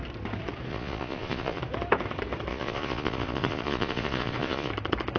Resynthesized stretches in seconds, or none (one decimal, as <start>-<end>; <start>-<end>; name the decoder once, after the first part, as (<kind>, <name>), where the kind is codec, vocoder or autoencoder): 0.7-1.6 (vocoder, Vocos); 2.5-4.7

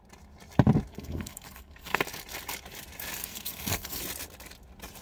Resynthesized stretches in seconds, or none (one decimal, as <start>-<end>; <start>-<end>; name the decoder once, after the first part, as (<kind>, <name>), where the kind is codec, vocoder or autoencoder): 0.9-2.0 (codec, SNAC); 3.2-4.0